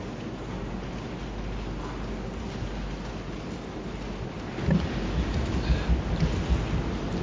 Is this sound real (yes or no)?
yes